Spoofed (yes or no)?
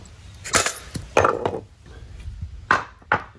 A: no